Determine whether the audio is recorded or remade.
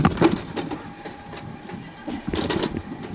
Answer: recorded